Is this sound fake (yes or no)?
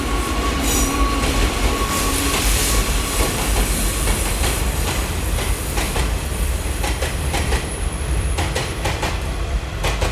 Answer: yes